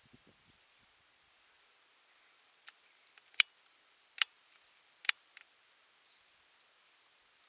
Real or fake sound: real